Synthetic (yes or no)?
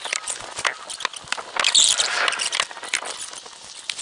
no